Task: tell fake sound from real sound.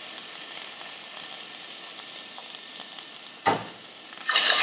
real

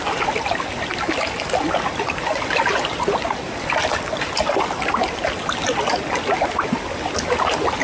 real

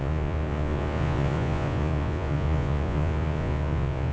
fake